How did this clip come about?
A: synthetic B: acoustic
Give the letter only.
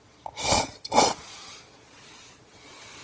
A